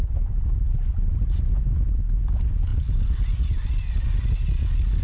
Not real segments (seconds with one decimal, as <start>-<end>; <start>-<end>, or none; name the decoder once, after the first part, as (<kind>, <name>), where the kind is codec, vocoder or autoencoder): none